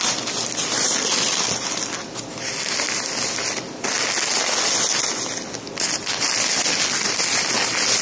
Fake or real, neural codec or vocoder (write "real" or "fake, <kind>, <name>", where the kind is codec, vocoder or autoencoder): real